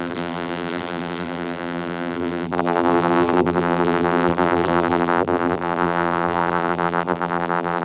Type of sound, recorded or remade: remade